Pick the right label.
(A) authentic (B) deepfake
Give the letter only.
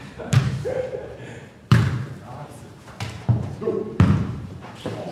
B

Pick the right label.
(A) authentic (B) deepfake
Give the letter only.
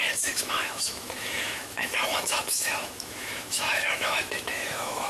B